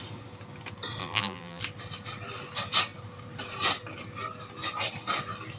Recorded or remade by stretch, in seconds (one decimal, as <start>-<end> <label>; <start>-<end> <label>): 0.0-1.0 recorded; 1.0-1.6 remade; 1.6-5.6 recorded